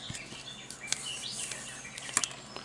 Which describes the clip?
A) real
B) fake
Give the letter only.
A